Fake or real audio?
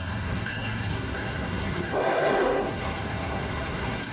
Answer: fake